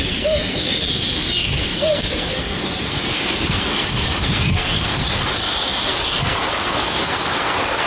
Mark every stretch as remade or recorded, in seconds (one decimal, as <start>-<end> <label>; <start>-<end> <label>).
0.0-7.9 remade